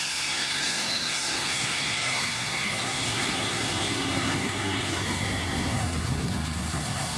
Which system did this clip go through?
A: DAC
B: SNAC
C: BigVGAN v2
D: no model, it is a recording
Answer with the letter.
B